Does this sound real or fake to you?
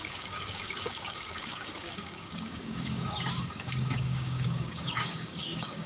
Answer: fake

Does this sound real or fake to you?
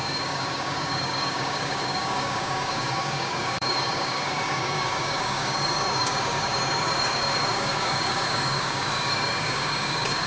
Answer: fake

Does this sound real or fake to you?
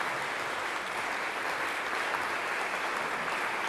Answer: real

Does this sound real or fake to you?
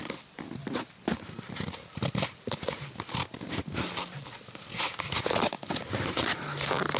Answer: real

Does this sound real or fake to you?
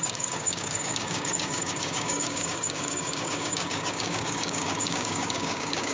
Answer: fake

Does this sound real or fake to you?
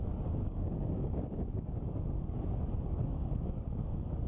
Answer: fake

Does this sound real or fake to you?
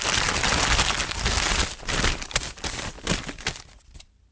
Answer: real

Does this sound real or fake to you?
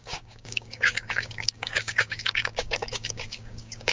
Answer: fake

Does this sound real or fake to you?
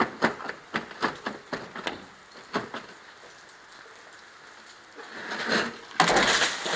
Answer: real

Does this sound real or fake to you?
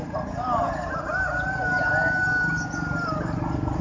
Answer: real